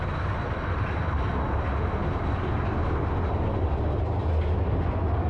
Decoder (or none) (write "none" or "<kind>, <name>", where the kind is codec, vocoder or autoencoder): none